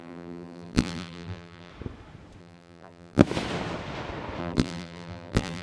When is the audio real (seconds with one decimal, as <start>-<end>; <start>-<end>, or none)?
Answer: 1.7-2.4; 3.2-4.4